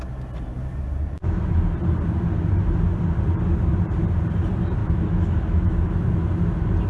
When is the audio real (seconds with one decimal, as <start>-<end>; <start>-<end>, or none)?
0.0-4.8; 6.1-6.9